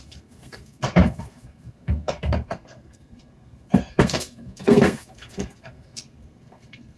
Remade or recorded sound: remade